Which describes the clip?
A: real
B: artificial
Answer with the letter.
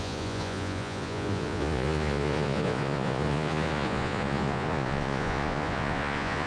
B